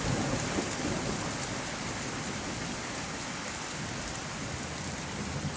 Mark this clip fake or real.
real